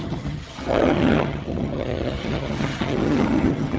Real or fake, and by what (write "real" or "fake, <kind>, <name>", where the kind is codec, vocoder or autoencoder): fake, vocoder, HiFi-GAN